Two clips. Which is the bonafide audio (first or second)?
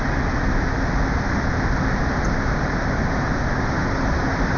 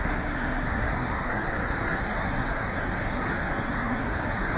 first